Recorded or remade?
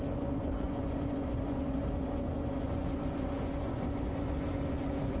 remade